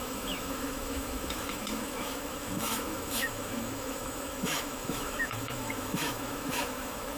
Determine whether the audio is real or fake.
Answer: fake